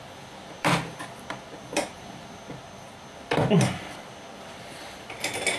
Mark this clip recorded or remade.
remade